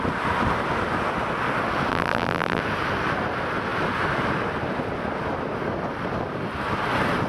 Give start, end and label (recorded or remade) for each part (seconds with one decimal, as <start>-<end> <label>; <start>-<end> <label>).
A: 0.0-1.9 recorded; 1.9-2.6 remade; 2.6-7.3 recorded